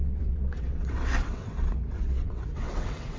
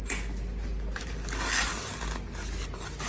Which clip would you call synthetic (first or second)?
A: first